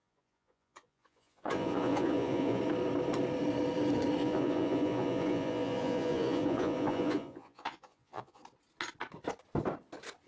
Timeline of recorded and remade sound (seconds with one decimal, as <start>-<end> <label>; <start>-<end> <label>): 0.0-2.6 remade; 2.6-4.2 recorded; 4.2-8.4 remade; 8.4-10.3 recorded